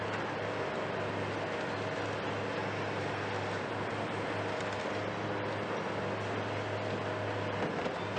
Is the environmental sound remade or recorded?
recorded